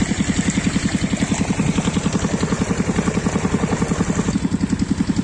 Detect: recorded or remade recorded